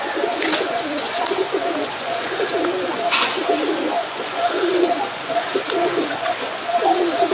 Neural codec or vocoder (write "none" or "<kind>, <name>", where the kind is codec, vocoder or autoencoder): vocoder, Vocos